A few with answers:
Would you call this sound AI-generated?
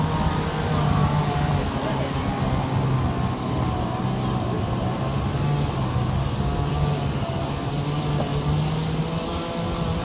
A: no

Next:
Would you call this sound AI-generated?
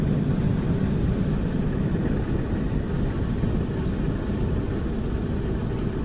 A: no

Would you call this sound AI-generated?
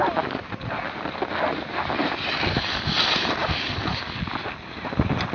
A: no